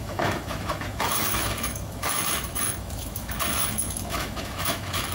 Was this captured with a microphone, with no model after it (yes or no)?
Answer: no